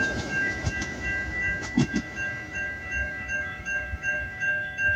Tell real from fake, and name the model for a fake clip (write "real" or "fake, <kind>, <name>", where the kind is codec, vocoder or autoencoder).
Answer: fake, autoencoder, DAC-VAE